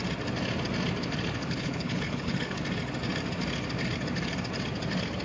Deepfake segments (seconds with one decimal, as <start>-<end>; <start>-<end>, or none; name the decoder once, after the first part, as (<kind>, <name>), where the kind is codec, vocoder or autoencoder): 1.4-2.6 (codec, HILCodec)